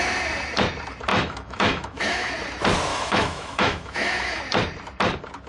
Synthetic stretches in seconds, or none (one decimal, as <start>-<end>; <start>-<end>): 1.1-2.3; 2.9-4.4